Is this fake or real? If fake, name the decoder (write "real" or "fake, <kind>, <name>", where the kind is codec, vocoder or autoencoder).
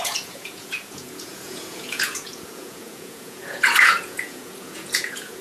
fake, vocoder, Vocos